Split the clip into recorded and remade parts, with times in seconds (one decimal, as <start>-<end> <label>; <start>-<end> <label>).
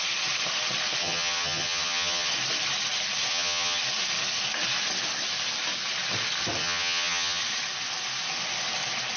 0.0-1.0 recorded; 1.0-2.3 remade; 2.3-3.3 recorded; 3.3-3.8 remade; 3.8-6.6 recorded; 6.6-7.4 remade; 7.4-9.2 recorded